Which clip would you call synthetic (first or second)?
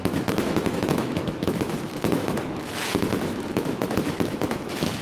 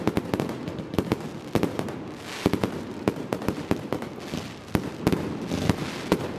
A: first